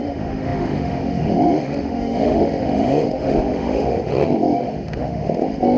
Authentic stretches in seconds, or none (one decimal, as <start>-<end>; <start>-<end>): none